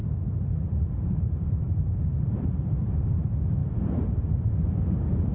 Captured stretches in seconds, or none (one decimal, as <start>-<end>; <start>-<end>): 3.2-5.3